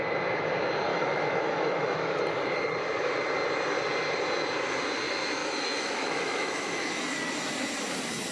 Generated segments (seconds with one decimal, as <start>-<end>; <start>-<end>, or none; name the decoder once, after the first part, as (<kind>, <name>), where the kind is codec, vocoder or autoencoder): 0.9-2.2 (autoencoder, DAC-VAE); 5.4-7.0

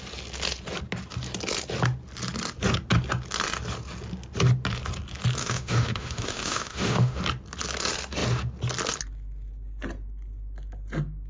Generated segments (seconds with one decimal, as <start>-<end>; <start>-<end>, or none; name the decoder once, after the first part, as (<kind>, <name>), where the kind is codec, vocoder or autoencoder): 5.4-7.2 (autoencoder, DAC-VAE)

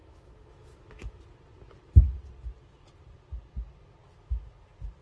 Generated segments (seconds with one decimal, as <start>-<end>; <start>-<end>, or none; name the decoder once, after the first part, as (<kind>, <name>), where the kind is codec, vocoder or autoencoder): 0.0-1.2 (autoencoder, DAC-VAE)

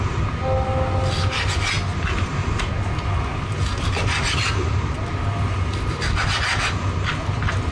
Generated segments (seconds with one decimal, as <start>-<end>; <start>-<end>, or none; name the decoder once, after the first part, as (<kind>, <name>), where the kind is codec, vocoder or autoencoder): none

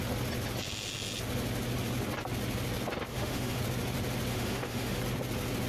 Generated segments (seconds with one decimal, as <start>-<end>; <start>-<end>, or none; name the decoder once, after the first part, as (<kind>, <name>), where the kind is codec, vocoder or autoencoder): 3.1-3.6 (autoencoder, DAC-VAE); 4.3-5.0

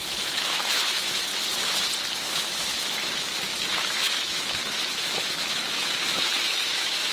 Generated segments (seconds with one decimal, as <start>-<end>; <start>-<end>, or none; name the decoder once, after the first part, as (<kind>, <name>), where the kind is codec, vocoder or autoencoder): 0.0-1.3 (autoencoder, DAC-VAE); 2.1-7.1